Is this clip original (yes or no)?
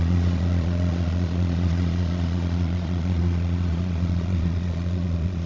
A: no